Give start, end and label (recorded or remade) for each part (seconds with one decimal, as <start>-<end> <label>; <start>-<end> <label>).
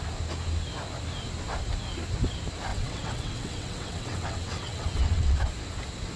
0.0-2.7 recorded; 2.7-5.4 remade; 5.4-6.2 recorded